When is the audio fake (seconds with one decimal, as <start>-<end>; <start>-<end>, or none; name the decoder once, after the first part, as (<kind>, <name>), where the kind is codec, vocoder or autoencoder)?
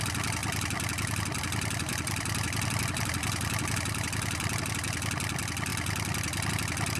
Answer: 0.4-4.6 (vocoder, BigVGAN v2)